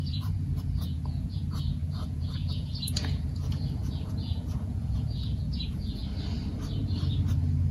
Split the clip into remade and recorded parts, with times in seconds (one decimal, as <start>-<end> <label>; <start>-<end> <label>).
0.0-6.0 remade; 6.0-7.7 recorded